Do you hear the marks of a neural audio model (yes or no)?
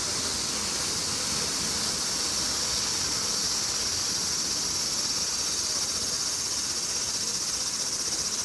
no